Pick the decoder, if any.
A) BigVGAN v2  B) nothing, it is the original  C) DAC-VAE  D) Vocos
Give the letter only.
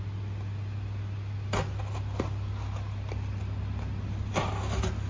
B